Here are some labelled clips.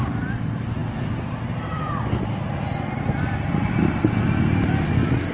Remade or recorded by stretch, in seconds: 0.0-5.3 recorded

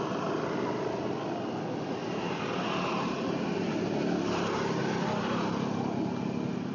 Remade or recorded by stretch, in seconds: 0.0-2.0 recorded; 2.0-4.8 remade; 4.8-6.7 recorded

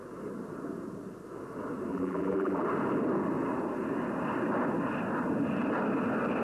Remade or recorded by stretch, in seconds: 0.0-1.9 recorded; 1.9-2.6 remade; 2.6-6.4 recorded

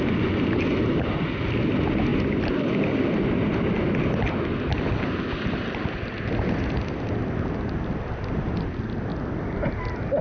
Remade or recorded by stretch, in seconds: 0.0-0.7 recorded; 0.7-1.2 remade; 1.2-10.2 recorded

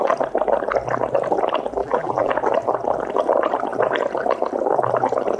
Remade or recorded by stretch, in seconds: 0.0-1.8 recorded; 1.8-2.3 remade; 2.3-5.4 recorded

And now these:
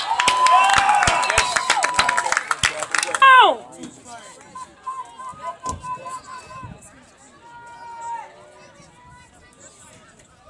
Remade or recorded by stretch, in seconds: 0.0-10.5 recorded

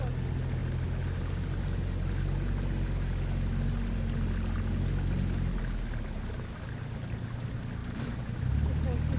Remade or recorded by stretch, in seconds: 0.0-7.8 recorded; 7.8-8.7 remade; 8.7-9.2 recorded

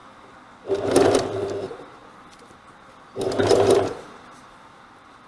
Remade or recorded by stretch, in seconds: 0.0-2.0 recorded; 2.0-5.3 remade